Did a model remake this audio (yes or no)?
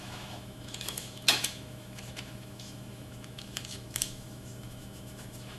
yes